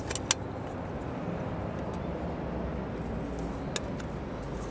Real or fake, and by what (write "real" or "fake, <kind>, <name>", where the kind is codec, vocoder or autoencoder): real